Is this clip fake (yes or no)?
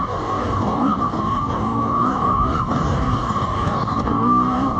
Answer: yes